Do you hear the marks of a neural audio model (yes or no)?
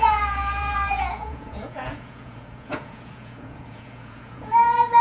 yes